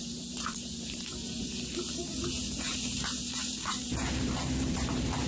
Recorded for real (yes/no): no